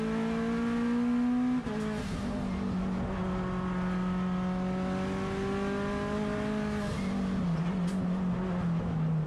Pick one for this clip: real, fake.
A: real